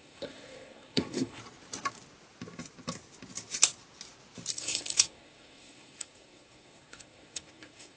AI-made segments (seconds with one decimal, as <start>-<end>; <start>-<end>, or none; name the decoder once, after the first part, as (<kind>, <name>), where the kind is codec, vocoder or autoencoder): 0.0-1.4 (codec, SNAC); 4.5-8.0

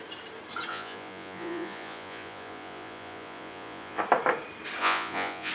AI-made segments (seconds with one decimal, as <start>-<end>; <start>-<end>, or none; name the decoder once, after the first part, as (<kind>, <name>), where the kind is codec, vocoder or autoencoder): 0.7-4.0 (vocoder, Vocos); 4.8-5.5